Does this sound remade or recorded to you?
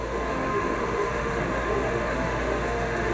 remade